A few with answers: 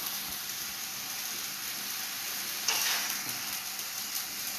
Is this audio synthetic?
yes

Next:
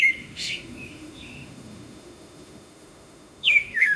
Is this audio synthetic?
yes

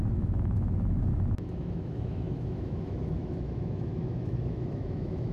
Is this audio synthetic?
yes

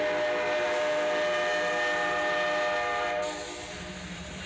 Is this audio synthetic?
no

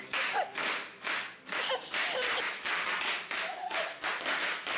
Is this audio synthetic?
no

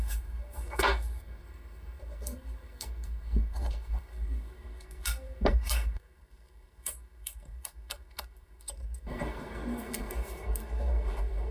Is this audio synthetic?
yes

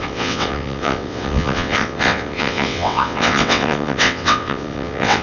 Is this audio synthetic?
yes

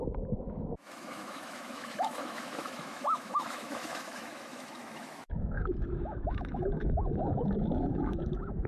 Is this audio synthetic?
yes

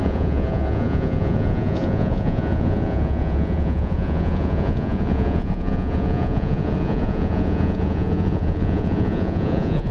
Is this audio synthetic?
yes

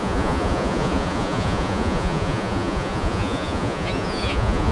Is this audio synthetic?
yes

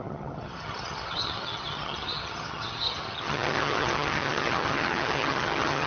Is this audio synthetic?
yes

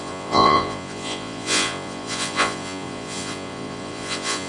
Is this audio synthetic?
yes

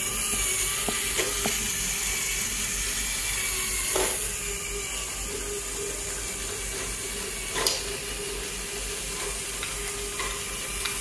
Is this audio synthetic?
no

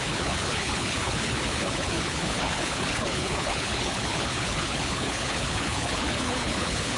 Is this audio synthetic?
yes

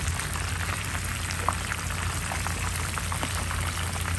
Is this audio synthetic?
no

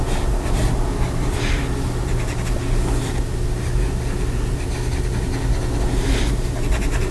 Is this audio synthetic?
yes